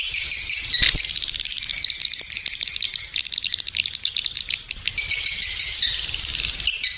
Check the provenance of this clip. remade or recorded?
recorded